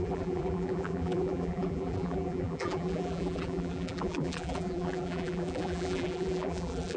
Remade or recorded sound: remade